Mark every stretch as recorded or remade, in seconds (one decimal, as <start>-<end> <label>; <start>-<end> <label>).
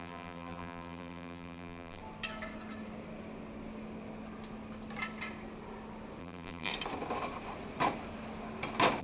0.0-2.0 remade; 2.0-6.2 recorded; 6.2-6.7 remade; 6.7-9.0 recorded